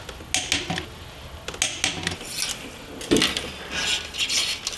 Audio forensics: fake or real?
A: real